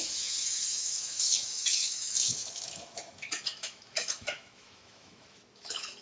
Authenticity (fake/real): fake